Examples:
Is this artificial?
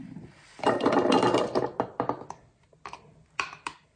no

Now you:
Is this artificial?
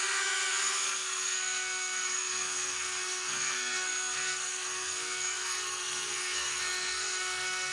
yes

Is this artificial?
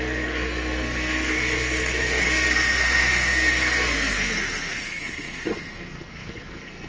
yes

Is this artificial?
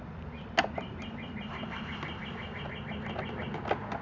no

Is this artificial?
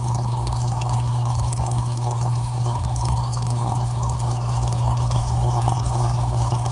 yes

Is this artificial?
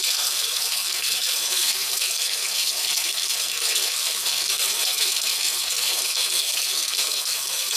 yes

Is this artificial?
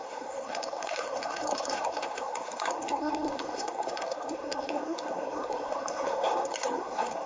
yes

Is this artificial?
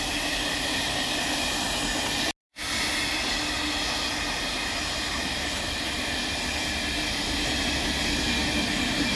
no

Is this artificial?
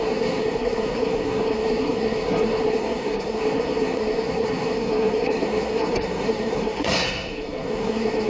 yes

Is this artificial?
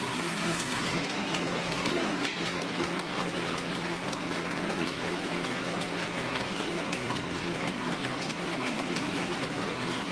yes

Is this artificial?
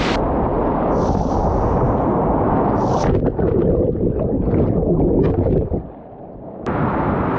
no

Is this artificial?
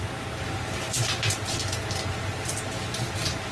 no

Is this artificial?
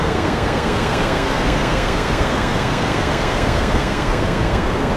yes